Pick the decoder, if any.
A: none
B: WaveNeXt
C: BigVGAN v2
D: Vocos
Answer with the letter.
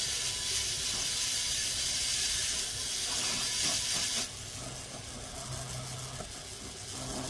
A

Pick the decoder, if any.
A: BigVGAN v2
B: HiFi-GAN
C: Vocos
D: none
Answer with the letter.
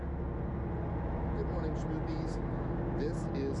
D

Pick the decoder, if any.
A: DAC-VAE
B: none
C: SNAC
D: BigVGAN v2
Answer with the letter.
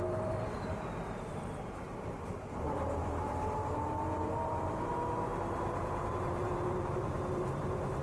D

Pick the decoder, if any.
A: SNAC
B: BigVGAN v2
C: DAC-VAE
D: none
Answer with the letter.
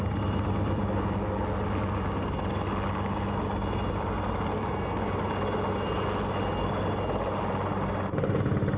D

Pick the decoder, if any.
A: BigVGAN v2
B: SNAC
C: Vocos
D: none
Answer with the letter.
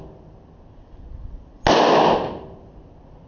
D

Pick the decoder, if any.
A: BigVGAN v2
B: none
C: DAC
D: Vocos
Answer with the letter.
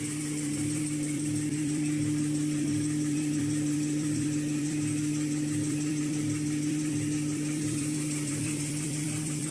A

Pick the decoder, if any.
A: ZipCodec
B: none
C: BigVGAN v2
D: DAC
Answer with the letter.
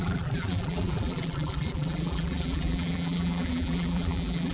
C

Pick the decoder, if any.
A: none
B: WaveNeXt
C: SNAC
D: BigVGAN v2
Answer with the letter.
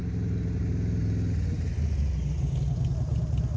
A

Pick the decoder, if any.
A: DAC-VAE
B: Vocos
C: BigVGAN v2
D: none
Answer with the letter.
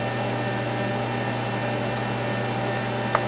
D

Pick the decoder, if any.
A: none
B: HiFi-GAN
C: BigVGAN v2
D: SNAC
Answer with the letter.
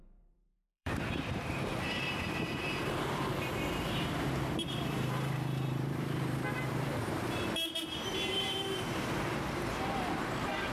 C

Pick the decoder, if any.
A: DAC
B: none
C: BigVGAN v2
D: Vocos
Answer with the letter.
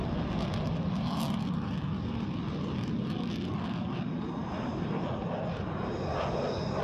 B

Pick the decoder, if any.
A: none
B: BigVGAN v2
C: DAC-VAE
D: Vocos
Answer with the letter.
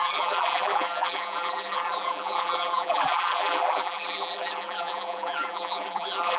B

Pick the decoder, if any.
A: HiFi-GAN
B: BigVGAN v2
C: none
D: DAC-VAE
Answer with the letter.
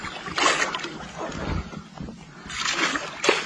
C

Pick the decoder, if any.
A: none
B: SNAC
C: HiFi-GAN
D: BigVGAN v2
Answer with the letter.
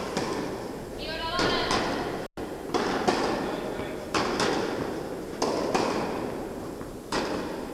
A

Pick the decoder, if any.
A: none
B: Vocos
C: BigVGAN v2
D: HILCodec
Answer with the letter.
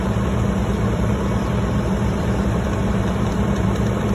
C